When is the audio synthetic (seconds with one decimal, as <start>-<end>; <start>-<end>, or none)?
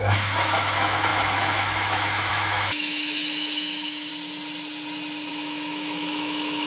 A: 0.0-4.1; 5.3-6.7